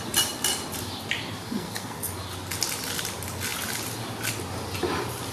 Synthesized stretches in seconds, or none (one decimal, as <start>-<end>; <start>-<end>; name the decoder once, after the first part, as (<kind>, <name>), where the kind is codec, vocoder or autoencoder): 1.4-2.1 (codec, SNAC)